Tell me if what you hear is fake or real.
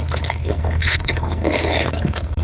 fake